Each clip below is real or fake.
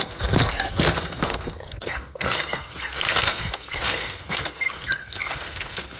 fake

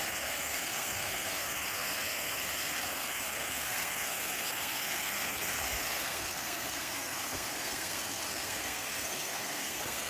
fake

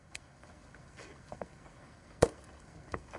fake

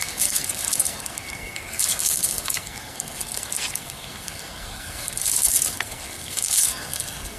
fake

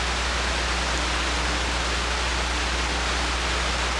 real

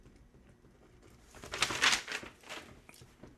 real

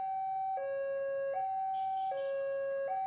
real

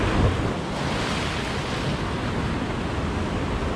real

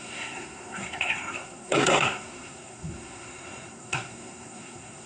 fake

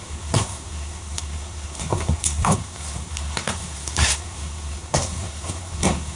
fake